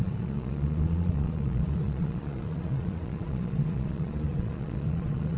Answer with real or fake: fake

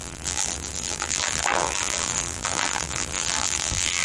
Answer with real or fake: fake